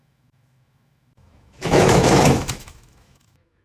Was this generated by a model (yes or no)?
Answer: yes